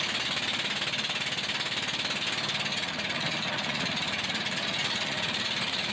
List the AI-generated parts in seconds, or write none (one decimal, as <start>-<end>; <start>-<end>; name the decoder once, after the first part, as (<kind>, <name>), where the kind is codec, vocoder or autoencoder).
2.7-5.9 (vocoder, Vocos)